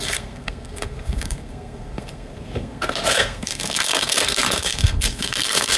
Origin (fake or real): fake